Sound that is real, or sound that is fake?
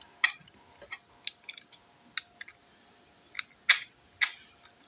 real